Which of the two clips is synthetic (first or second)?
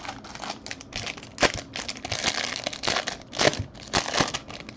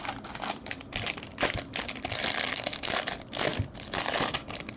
second